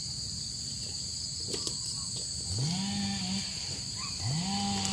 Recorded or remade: recorded